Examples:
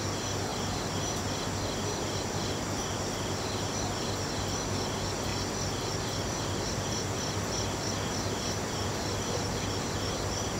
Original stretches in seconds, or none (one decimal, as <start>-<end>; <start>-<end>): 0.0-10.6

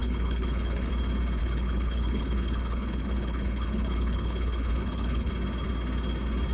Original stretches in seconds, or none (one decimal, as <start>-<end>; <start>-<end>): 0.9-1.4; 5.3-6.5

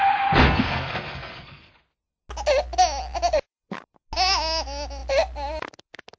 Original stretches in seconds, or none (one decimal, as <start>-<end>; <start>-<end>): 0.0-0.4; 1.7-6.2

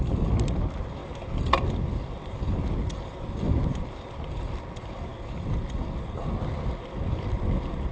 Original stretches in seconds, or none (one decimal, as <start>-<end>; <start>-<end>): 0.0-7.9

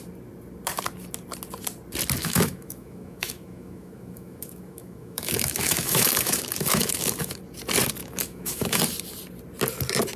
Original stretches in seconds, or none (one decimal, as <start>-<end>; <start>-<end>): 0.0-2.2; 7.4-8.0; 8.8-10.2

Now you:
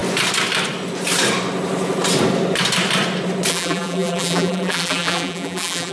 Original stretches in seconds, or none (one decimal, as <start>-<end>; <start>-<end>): 0.0-3.5